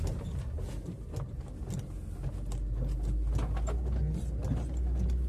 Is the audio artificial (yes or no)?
no